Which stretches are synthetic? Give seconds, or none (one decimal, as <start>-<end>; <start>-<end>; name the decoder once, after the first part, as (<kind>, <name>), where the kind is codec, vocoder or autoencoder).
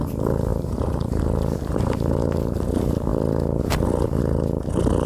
0.5-2.2 (vocoder, BigVGAN v2)